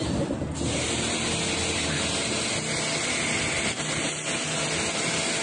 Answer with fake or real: real